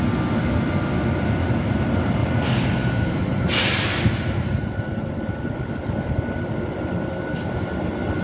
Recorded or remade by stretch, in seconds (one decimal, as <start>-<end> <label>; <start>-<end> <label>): 0.0-2.2 recorded; 2.2-5.1 remade; 5.1-8.2 recorded